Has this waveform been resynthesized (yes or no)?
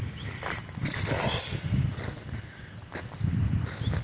no